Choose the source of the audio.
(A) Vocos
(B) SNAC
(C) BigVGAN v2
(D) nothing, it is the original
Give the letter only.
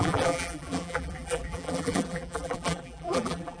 C